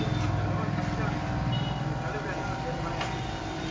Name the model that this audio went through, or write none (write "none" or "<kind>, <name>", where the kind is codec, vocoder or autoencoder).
none